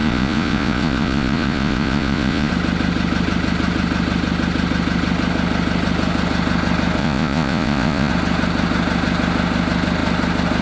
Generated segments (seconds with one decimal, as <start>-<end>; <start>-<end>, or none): 0.0-2.5; 7.0-8.1